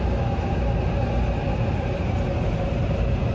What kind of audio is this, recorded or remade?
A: recorded